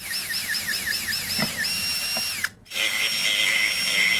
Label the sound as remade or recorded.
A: recorded